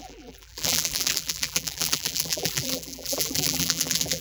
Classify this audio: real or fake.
fake